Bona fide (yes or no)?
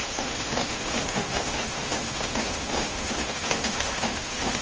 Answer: no